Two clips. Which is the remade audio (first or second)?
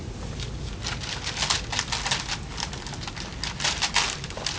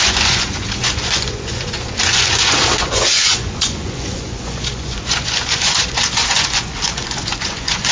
second